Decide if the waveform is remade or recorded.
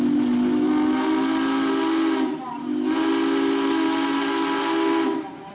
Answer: recorded